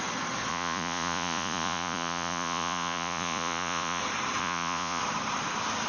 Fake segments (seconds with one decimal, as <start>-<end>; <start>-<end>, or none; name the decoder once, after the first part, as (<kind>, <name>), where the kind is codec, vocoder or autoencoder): 0.5-4.0 (vocoder, Vocos); 4.4-5.0